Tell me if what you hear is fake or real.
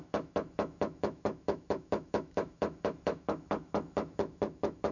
fake